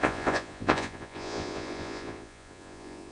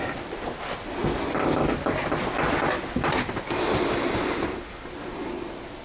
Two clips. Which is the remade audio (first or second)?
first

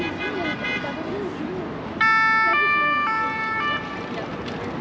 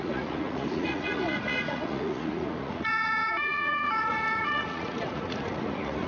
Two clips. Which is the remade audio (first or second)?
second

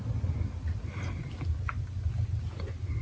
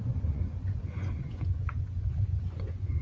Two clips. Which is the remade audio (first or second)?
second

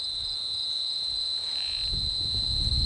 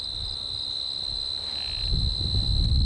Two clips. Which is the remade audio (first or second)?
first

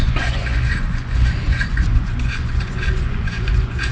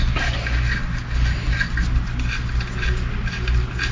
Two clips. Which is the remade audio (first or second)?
first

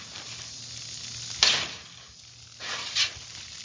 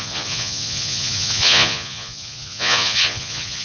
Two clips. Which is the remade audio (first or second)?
second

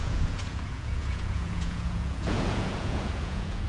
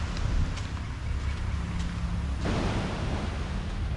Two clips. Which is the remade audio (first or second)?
first